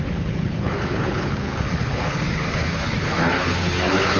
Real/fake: fake